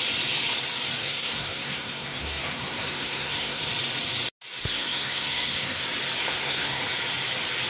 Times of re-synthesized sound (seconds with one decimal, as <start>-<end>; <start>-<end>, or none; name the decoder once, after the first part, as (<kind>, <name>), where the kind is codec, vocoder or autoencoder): 1.0-3.6 (codec, SNAC); 4.6-5.8; 6.2-6.8